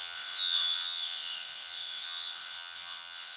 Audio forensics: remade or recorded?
remade